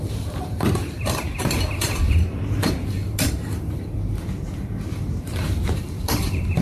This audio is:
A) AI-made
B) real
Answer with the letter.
A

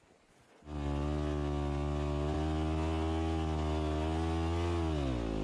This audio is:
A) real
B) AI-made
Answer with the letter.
A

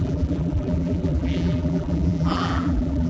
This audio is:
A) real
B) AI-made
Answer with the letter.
B